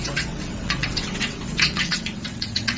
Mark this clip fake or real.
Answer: fake